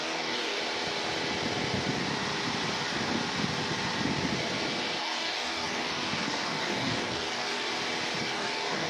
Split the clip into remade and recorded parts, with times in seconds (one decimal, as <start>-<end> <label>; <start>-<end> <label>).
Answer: 0.0-0.6 remade; 0.6-5.0 recorded; 5.0-7.7 remade; 7.7-8.2 recorded; 8.2-8.9 remade